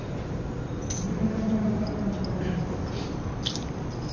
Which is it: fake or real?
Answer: real